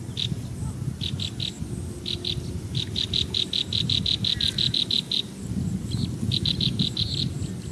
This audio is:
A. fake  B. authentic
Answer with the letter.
B